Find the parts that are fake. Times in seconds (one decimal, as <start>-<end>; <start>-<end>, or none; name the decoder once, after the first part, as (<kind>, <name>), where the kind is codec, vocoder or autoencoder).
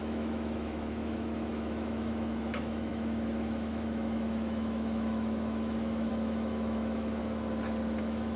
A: 0.0-7.2 (autoencoder, DAC-VAE); 8.0-8.4